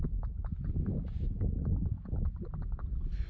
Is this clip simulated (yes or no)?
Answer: no